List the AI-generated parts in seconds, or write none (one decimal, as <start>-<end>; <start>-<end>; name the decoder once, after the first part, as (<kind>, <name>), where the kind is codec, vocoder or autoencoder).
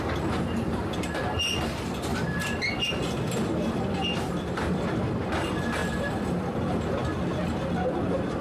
2.1-5.0 (vocoder, BigVGAN v2); 5.8-6.6